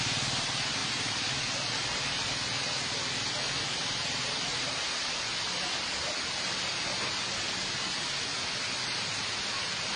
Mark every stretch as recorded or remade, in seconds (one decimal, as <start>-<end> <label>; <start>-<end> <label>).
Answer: 0.0-10.0 recorded